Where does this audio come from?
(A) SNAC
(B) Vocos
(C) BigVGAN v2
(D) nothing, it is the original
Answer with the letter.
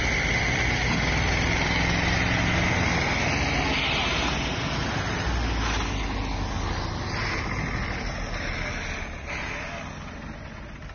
D